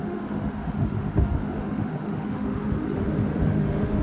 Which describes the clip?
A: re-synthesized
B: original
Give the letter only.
A